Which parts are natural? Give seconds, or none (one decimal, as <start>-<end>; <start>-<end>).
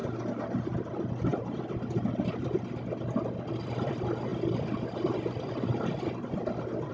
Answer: 0.7-6.9